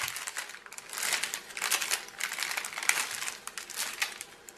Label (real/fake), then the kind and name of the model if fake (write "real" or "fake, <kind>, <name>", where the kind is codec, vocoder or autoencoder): real